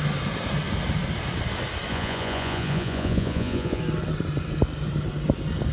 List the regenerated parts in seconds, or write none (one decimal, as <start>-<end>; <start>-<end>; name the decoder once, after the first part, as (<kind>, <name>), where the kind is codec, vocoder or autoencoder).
1.9-3.8 (vocoder, Vocos)